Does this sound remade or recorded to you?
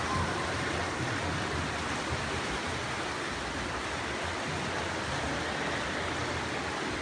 recorded